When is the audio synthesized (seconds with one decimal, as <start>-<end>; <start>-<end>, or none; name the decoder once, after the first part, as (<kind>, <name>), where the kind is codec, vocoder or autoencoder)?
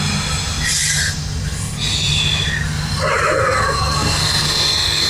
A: 3.4-5.1 (codec, SNAC)